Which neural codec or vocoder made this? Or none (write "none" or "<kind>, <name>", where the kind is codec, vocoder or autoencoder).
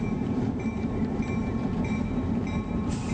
vocoder, BigVGAN v2